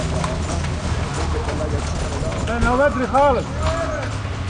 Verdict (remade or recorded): recorded